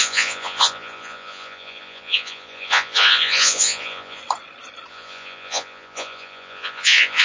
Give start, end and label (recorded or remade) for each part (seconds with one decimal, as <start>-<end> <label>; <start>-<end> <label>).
0.0-4.2 remade; 4.2-4.9 recorded; 4.9-7.2 remade